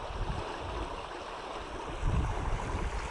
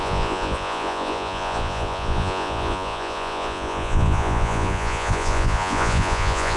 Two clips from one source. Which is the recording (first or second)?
first